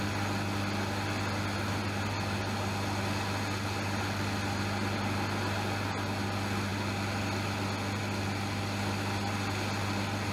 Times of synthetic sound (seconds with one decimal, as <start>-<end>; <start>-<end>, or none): none